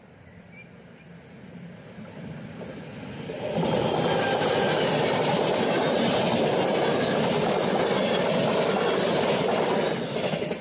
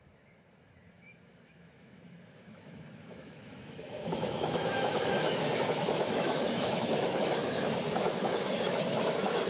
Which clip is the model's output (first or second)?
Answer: second